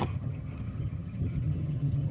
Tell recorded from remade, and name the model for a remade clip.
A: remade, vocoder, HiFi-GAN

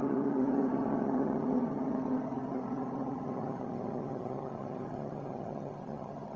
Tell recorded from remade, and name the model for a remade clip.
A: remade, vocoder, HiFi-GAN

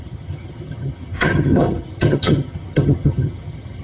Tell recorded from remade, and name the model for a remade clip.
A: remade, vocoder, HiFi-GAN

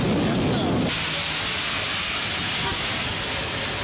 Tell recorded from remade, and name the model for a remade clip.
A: recorded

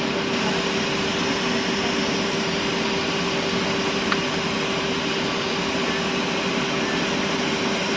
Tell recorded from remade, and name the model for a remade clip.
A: recorded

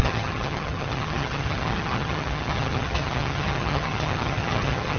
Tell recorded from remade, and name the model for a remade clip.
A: remade, vocoder, HiFi-GAN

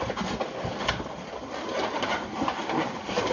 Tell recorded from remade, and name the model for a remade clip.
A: recorded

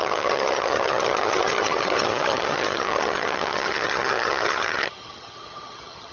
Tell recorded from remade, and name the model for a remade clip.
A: remade, vocoder, HiFi-GAN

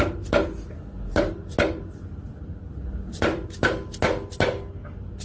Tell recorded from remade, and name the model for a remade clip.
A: recorded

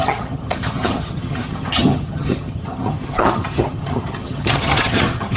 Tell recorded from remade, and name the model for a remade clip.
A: remade, vocoder, HiFi-GAN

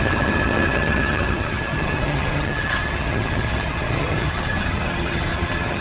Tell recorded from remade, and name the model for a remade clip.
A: remade, vocoder, HiFi-GAN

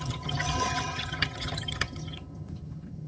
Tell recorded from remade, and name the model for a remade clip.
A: remade, vocoder, HiFi-GAN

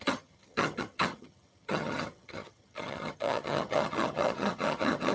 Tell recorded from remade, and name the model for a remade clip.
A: remade, vocoder, HiFi-GAN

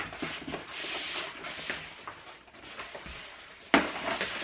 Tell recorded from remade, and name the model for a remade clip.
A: recorded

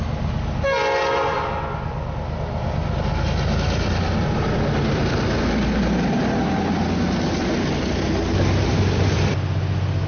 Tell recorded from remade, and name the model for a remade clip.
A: recorded